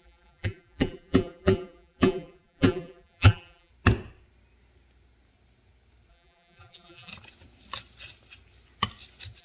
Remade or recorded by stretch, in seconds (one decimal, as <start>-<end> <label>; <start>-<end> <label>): 0.0-3.7 remade; 3.7-6.1 recorded; 6.1-7.1 remade; 7.1-9.4 recorded